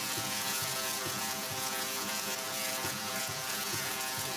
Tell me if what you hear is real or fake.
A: fake